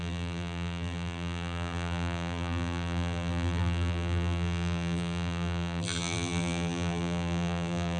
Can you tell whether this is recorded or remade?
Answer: remade